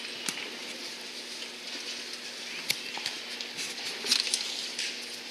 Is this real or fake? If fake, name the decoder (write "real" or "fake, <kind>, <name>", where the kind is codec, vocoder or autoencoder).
real